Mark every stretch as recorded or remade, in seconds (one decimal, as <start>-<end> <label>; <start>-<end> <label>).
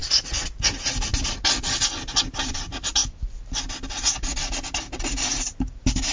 0.0-0.5 remade; 0.5-6.1 recorded